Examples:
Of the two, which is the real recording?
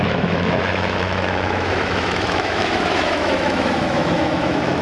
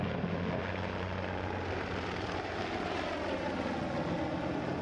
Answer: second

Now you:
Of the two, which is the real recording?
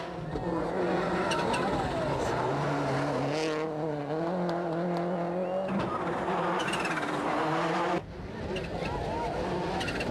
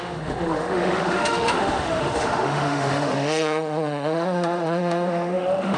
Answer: first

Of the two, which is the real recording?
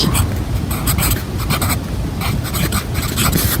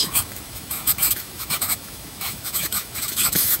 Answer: first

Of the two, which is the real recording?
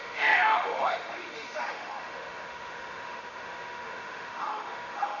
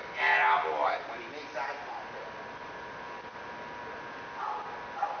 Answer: second